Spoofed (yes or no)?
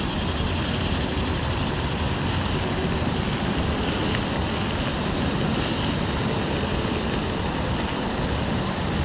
no